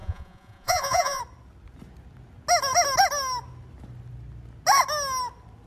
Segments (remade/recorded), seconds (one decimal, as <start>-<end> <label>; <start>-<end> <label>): 0.0-1.2 remade; 1.2-5.7 recorded